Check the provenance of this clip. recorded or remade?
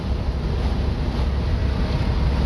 recorded